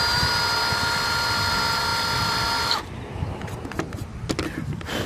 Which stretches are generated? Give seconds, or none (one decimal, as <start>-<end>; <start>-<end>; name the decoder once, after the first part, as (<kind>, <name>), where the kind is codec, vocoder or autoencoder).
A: none